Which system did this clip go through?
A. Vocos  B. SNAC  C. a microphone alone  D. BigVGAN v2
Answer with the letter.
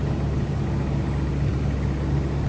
C